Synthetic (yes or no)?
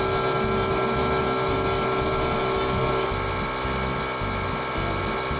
no